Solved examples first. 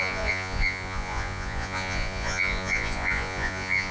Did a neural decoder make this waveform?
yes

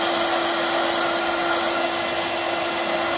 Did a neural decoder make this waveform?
no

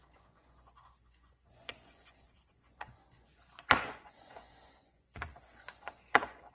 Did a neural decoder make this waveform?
yes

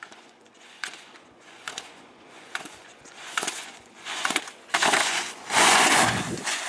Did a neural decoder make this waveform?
yes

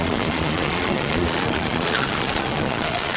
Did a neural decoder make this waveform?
yes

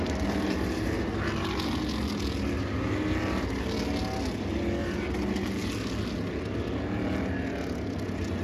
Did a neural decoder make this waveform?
no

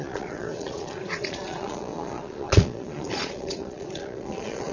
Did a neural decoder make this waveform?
yes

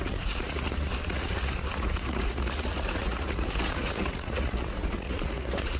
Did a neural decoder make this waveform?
yes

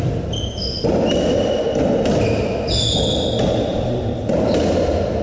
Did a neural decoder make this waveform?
no